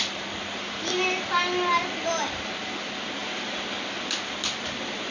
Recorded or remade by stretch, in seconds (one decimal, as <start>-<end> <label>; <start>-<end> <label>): 0.0-5.1 recorded